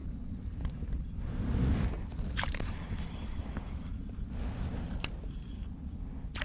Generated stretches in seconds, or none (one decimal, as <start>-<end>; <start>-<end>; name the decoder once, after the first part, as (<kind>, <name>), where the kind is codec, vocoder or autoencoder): 0.0-0.7 (vocoder, BigVGAN v2); 2.1-3.4